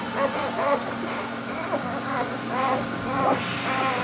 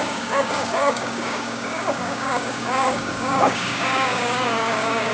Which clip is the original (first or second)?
first